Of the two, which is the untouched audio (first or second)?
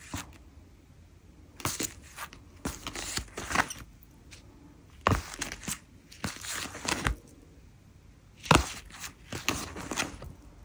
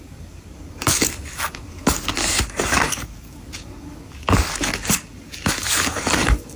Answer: first